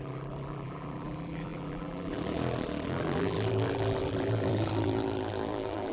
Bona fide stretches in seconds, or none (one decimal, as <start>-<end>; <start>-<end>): none